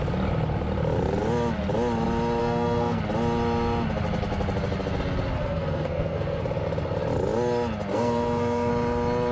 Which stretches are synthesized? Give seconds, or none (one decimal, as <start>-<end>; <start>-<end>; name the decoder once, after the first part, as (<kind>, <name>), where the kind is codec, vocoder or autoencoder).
2.4-3.0 (codec, SNAC); 5.4-6.4; 7.9-8.7